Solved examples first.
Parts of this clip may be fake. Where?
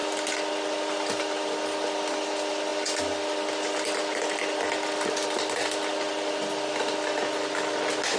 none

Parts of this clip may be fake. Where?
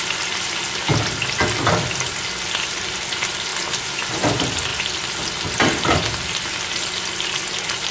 none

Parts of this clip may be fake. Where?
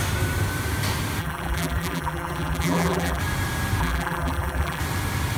1.2-3.2 (vocoder, BigVGAN v2); 3.8-4.8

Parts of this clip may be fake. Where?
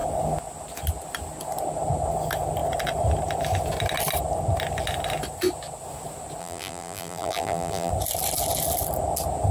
6.4-7.9 (vocoder, BigVGAN v2)